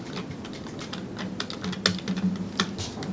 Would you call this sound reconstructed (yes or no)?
no